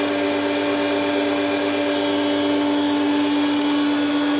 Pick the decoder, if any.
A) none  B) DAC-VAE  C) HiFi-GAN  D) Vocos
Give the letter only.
A